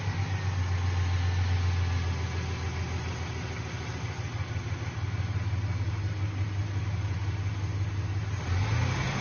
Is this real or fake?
real